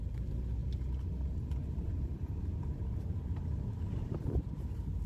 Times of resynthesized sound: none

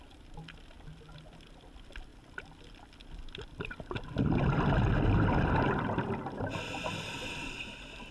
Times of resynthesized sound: none

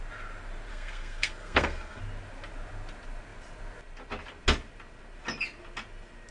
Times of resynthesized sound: 0.7-2.0 (codec, SNAC)